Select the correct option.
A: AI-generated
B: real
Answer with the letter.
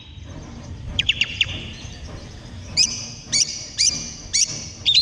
A